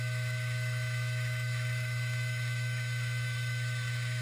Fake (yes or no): yes